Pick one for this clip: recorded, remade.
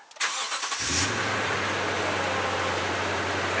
recorded